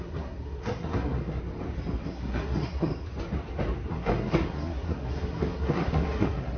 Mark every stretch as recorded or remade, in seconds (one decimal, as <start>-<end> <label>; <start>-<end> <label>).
0.0-1.4 remade; 1.4-2.0 recorded; 2.0-2.9 remade; 2.9-3.9 recorded; 3.9-6.6 remade